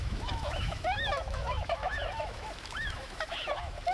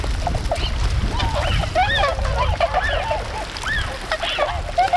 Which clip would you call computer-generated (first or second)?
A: first